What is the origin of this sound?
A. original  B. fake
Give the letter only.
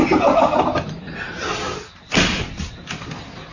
A